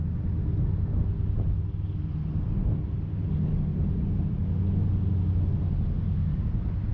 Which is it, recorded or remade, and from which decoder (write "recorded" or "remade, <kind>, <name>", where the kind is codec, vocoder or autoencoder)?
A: recorded